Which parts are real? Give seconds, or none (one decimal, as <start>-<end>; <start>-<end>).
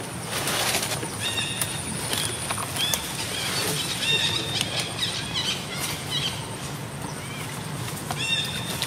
0.0-8.9